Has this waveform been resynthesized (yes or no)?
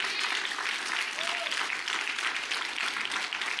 no